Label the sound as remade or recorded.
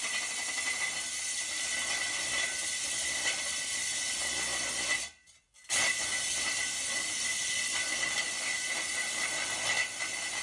recorded